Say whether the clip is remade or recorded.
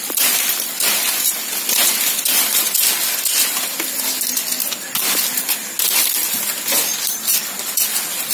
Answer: recorded